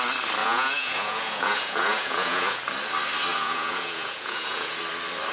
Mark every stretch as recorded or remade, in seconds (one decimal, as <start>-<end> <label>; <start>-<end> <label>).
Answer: 0.0-0.4 recorded; 0.4-2.6 remade; 2.6-3.3 recorded; 3.3-4.8 remade; 4.8-5.3 recorded